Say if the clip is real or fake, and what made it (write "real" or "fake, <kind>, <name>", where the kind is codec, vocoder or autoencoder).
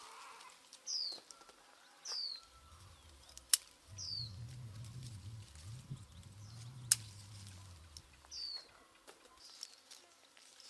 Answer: real